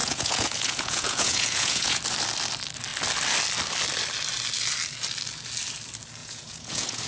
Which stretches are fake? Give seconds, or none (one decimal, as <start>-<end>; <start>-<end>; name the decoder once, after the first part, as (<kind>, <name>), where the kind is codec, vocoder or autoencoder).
0.0-2.0 (vocoder, Vocos); 6.2-7.1